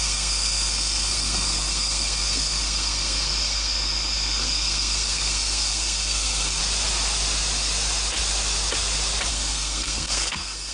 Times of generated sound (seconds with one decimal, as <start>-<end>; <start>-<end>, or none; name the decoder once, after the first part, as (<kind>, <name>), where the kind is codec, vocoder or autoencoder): 0.0-6.6 (codec, SNAC); 9.3-10.7